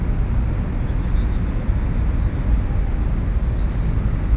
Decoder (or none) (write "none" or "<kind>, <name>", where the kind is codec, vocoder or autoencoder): none